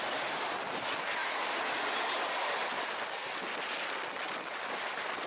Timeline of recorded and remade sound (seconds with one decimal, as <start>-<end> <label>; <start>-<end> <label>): 0.0-5.3 recorded